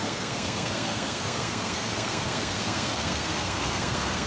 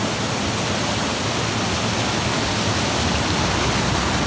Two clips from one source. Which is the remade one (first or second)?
first